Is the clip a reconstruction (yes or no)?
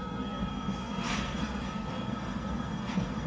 yes